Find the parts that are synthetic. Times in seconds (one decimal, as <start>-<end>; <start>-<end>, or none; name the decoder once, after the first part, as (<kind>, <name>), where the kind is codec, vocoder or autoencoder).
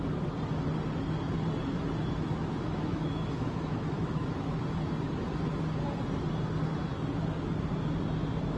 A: 2.5-4.6 (autoencoder, DAC-VAE)